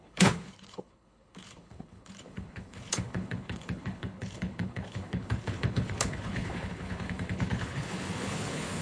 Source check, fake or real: fake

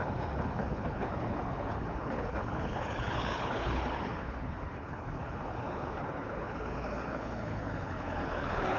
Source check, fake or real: fake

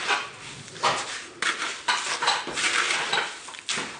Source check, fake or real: real